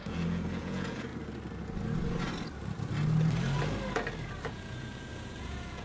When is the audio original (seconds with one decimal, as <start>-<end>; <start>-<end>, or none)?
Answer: 1.1-4.5